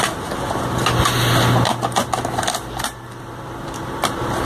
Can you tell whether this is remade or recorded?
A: recorded